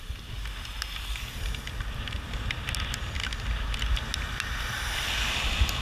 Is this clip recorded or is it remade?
recorded